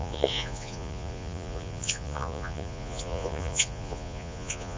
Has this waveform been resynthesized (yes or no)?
yes